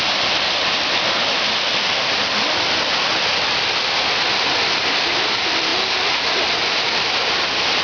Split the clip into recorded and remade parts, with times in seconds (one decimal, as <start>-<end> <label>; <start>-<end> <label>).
0.0-5.7 recorded; 5.7-7.3 remade; 7.3-7.8 recorded